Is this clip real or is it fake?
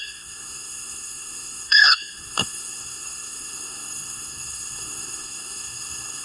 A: fake